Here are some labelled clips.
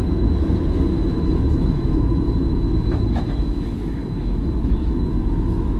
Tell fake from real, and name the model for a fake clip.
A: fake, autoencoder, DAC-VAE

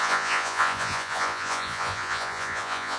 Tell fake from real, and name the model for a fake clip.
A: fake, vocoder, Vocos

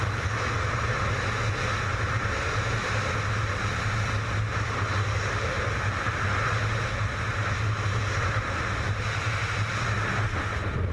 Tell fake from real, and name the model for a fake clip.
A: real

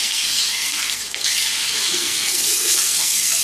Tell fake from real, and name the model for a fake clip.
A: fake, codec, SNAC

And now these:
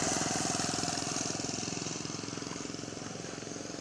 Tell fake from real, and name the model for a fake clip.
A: real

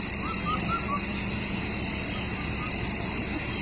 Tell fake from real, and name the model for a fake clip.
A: real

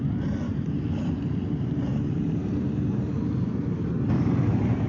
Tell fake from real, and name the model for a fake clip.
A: fake, vocoder, BigVGAN v2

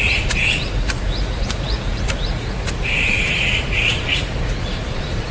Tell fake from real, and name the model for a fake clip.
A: fake, vocoder, Vocos